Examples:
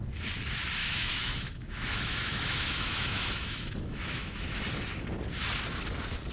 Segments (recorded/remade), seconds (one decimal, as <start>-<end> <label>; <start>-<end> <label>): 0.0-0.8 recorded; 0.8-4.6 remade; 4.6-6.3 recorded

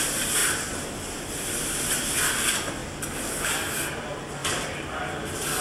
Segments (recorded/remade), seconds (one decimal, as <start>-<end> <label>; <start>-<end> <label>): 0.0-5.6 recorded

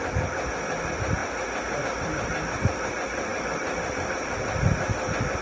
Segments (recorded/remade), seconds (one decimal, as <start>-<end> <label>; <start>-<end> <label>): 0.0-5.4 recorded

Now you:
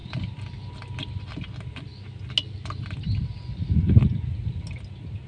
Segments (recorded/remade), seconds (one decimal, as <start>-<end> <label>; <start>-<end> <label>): 0.0-5.3 recorded

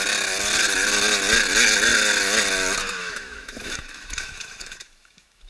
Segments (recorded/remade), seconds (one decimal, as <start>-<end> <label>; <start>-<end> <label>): 0.0-3.0 recorded; 3.0-5.5 remade

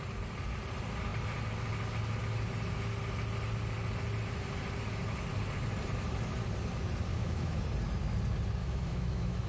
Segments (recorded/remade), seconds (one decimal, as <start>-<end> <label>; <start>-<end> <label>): 0.0-7.1 recorded; 7.1-7.6 remade; 7.6-8.6 recorded; 8.6-9.5 remade